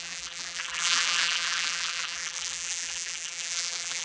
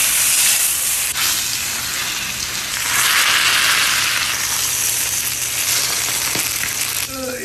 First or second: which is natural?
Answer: second